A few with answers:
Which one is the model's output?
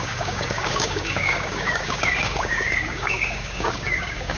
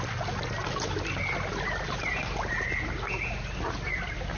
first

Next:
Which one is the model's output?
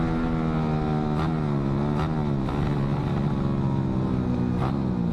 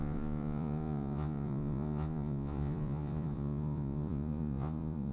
second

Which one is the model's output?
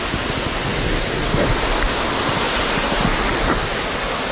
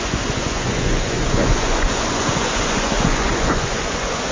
second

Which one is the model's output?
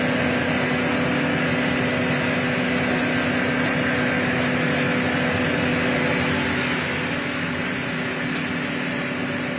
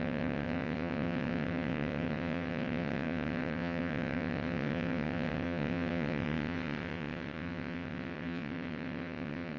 second